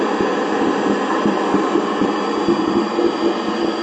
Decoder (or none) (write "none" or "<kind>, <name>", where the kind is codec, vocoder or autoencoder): none